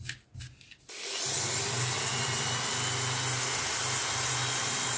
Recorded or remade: recorded